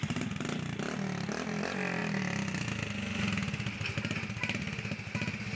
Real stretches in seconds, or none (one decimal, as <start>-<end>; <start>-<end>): 0.0-5.6